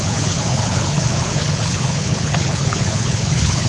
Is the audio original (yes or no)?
no